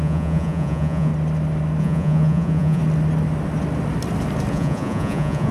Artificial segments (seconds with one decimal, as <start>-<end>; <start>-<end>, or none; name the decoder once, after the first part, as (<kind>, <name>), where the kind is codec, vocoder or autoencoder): 0.0-1.1 (vocoder, Vocos); 1.8-2.8; 4.5-5.5